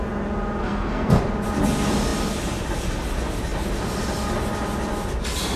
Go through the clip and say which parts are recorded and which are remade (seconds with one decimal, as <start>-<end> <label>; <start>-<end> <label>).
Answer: 0.0-0.6 recorded; 0.6-1.2 remade; 1.2-5.6 recorded